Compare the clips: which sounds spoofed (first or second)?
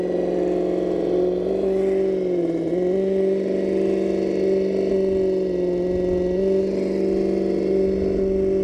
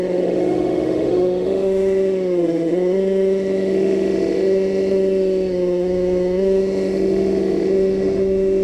second